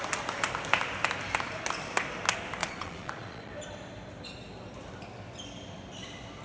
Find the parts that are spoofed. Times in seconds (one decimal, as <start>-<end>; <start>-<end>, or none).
2.6-3.5

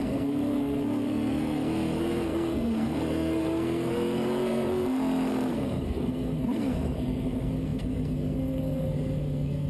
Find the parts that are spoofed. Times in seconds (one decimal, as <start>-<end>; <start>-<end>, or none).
0.0-9.7

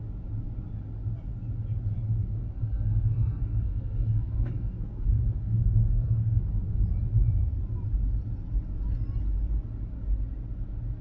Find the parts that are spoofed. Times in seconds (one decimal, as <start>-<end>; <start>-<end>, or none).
2.2-6.4